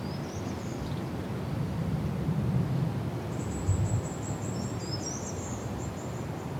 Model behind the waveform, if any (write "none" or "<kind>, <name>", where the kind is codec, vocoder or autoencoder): none